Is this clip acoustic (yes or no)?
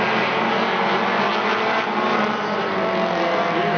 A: yes